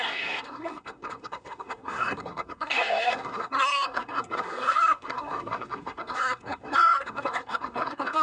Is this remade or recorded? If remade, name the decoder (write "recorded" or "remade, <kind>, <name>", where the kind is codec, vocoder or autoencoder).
remade, codec, SNAC